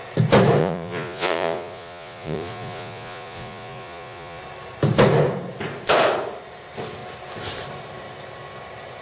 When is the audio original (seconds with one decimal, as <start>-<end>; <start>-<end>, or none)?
0.0-0.6; 4.4-9.0